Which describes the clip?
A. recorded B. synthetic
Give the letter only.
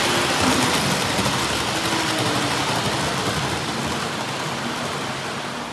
A